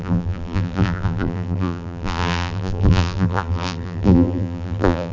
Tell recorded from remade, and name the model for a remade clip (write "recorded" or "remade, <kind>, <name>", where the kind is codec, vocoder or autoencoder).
remade, vocoder, BigVGAN v2